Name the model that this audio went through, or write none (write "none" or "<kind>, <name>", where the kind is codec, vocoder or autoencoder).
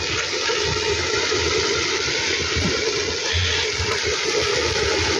none